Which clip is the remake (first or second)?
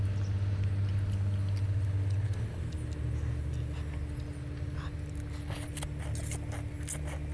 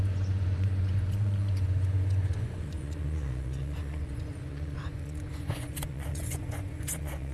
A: second